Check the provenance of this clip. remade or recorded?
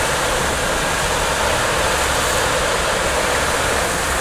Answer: recorded